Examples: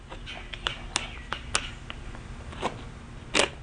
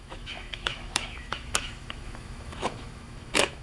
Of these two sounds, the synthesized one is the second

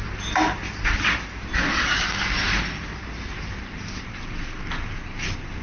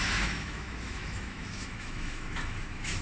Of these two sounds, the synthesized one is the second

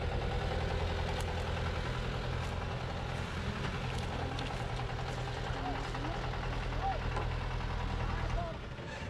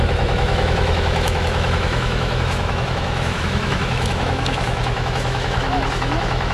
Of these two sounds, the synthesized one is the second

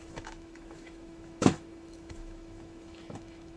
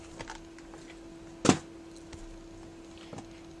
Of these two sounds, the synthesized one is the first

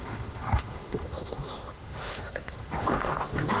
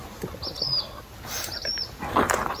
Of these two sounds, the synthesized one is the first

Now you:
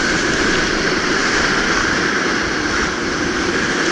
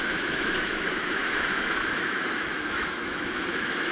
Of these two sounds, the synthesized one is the second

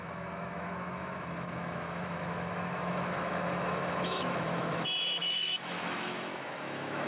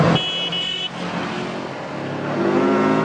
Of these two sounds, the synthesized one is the first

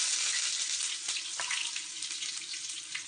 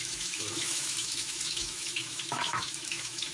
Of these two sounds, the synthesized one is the second